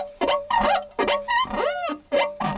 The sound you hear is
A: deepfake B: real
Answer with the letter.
A